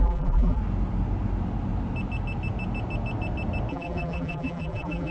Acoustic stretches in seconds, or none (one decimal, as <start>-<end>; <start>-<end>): 0.6-3.7